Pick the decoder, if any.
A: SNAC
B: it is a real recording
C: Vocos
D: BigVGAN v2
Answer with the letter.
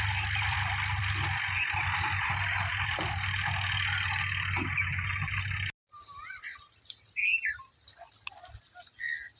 B